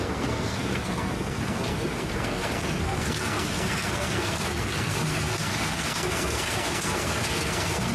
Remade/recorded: remade